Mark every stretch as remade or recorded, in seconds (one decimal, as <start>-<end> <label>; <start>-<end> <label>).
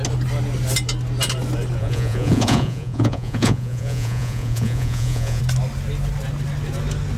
0.0-1.8 recorded; 1.8-5.4 remade; 5.4-7.2 recorded